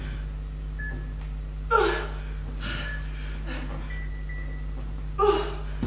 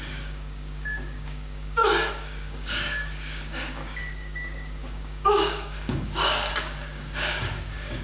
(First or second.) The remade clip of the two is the second